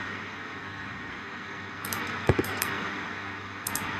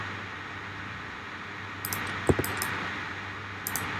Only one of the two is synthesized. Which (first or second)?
first